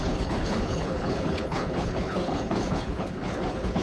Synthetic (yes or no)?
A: yes